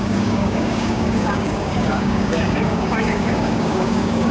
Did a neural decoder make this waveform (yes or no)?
yes